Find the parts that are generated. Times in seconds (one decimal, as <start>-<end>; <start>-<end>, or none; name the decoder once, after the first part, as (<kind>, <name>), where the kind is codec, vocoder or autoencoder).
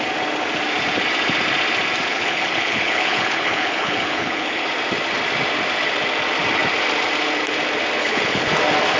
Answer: 2.1-4.7 (codec, HILCodec); 8.0-8.6